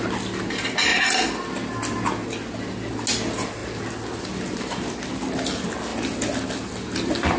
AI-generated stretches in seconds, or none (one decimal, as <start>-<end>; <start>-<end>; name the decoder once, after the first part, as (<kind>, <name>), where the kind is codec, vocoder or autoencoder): none